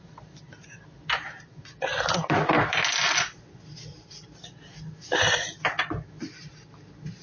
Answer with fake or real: real